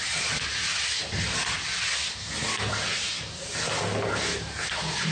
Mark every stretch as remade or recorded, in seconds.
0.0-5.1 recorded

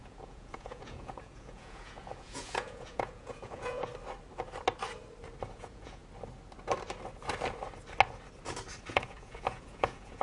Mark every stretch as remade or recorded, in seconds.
0.0-3.9 remade; 3.9-5.5 recorded; 5.5-6.0 remade; 6.0-8.9 recorded; 8.9-10.2 remade